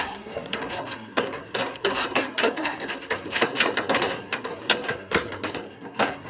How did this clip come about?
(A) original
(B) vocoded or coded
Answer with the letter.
B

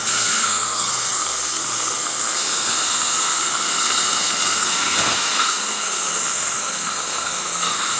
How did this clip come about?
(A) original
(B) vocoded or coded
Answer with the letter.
B